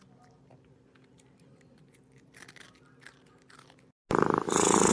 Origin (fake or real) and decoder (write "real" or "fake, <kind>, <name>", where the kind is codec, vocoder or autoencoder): real